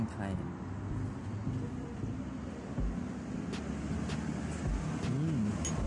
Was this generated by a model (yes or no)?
no